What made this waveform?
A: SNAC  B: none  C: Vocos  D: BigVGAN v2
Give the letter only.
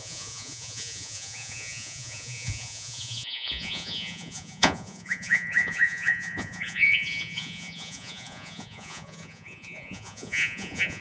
C